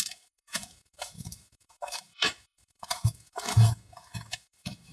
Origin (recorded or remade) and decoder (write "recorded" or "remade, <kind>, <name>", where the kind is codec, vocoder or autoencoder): remade, autoencoder, DAC-VAE